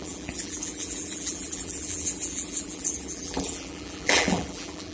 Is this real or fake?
fake